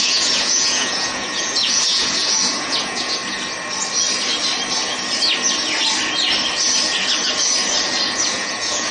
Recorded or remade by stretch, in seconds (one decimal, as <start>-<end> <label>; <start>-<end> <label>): 0.0-3.2 remade; 3.2-8.3 recorded; 8.3-8.9 remade